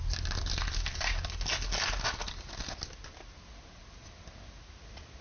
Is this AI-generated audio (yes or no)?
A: no